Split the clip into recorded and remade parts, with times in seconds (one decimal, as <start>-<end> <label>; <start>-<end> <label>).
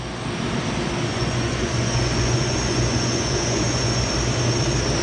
0.0-1.1 recorded; 1.1-4.1 remade; 4.1-5.0 recorded